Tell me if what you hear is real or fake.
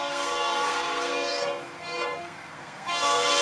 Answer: fake